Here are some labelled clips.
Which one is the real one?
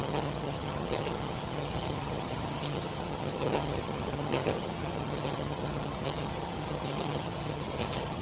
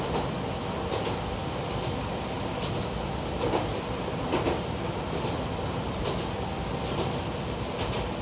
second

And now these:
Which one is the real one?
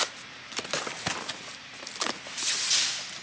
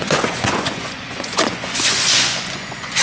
first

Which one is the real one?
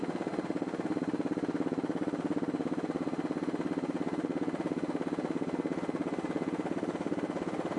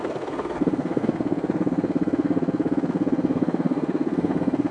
first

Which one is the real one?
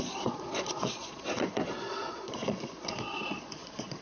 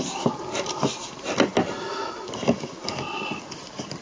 second